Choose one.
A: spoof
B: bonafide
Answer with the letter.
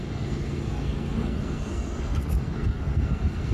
A